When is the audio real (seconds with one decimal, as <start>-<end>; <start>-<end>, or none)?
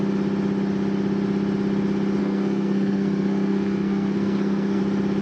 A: 0.0-2.2; 4.8-5.2